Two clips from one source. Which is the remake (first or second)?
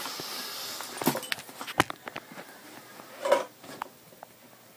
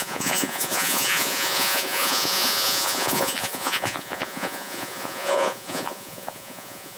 second